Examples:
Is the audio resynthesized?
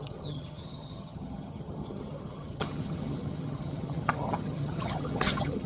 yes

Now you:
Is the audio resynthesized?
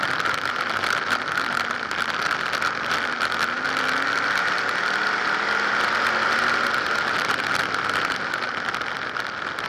no